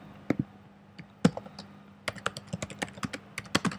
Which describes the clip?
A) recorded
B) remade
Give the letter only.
A